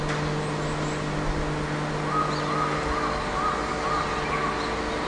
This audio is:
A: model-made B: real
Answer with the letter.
B